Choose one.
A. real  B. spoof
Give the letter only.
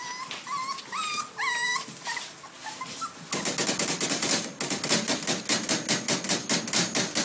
A